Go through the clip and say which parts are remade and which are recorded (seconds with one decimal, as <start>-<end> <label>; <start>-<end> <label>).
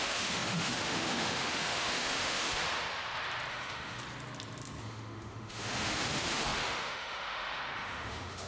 0.0-2.6 remade; 2.6-3.5 recorded; 3.5-4.0 remade; 4.0-4.8 recorded; 4.8-8.5 remade